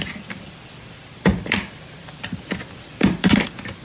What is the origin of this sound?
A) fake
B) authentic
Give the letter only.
A